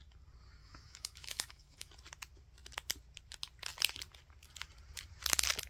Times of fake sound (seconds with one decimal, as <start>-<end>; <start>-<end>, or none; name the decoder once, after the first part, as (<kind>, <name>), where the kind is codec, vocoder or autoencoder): 0.6-1.9 (autoencoder, DAC-VAE)